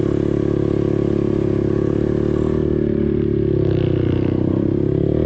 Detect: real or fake real